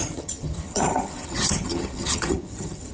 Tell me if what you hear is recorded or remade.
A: remade